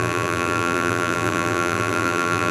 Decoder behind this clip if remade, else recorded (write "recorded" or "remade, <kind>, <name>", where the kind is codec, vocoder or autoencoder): remade, vocoder, BigVGAN v2